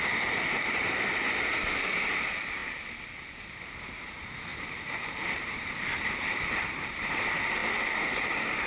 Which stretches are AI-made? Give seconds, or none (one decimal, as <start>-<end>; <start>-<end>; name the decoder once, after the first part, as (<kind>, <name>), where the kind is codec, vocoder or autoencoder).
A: 4.5-6.3 (vocoder, BigVGAN v2)